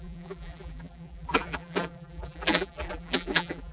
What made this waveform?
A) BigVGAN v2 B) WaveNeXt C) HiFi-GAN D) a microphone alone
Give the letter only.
A